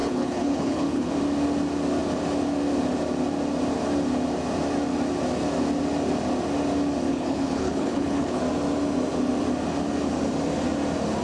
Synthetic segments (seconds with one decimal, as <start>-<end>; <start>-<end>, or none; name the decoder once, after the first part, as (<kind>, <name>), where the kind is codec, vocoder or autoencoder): 0.0-1.1 (codec, HILCodec); 7.1-8.4